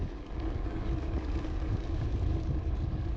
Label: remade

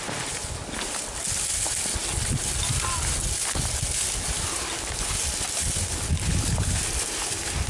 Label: recorded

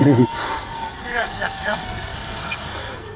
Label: remade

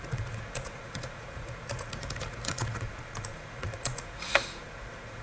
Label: remade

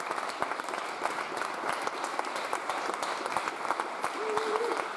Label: recorded